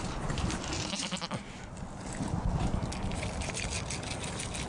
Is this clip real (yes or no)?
yes